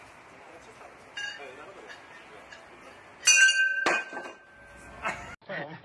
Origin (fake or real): real